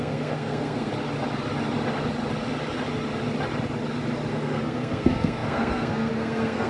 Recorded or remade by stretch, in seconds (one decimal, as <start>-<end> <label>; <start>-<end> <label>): 0.0-0.9 remade; 0.9-4.3 recorded; 4.3-6.7 remade